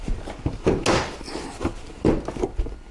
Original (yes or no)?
yes